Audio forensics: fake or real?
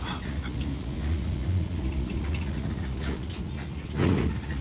fake